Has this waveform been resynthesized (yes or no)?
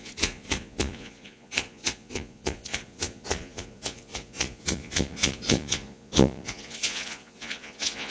yes